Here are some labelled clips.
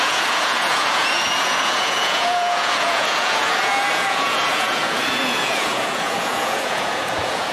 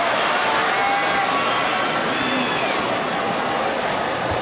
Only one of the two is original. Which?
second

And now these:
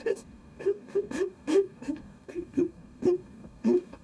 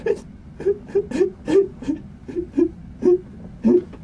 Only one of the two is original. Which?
second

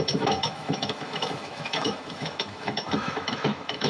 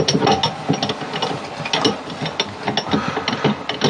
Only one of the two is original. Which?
second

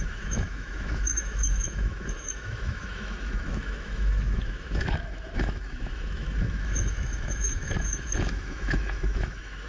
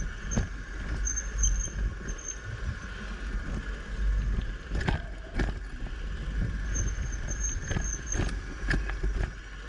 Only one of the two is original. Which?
second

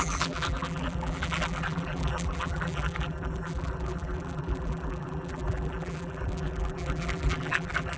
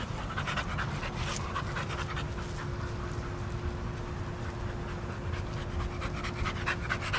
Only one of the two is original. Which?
second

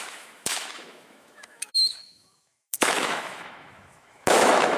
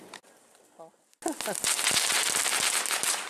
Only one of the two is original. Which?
second